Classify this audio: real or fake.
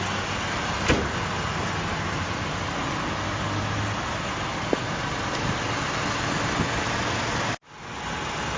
real